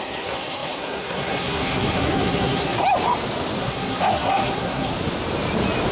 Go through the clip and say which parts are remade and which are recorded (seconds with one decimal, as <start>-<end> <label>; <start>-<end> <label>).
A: 0.0-2.8 remade; 2.8-3.6 recorded; 3.6-4.9 remade; 4.9-5.9 recorded